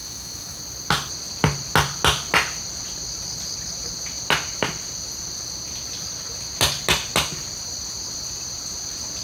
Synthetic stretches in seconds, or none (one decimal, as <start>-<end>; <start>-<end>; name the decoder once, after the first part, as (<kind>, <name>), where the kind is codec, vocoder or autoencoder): 0.0-0.6 (autoencoder, DAC-VAE)